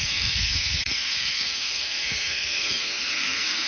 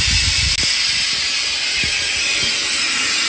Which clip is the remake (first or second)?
first